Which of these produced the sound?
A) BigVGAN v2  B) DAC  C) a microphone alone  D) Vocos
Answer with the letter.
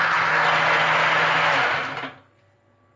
C